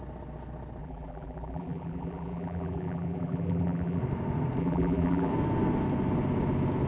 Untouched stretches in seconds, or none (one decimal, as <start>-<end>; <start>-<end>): 0.0-0.8; 4.0-4.6; 5.3-6.9